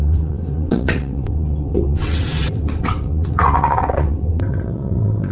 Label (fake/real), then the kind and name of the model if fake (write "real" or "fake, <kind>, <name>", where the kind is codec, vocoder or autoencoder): fake, vocoder, WaveNeXt